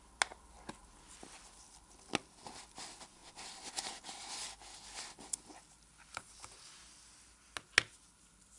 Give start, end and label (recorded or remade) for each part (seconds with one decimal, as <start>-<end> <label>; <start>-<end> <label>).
0.0-6.1 recorded; 6.1-6.8 remade; 6.8-8.6 recorded